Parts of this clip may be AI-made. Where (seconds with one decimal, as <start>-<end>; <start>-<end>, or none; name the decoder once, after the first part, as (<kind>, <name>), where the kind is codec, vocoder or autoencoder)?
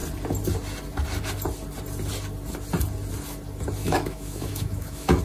3.8-5.2 (autoencoder, DAC-VAE)